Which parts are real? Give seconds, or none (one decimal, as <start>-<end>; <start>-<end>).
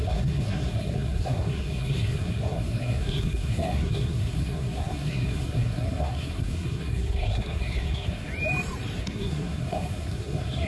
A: 8.3-9.0